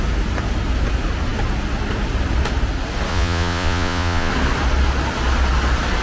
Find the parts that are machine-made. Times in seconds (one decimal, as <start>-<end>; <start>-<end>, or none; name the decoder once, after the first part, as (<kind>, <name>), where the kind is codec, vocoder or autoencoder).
3.1-4.3 (vocoder, Vocos)